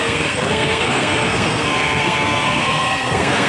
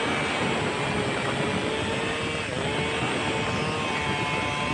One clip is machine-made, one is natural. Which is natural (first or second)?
second